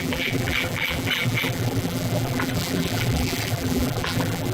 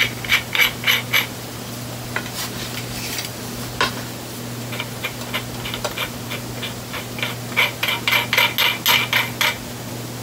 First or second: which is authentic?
second